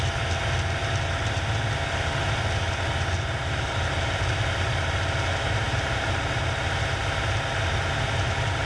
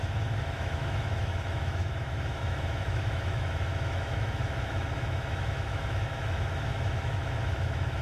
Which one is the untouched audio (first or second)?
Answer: first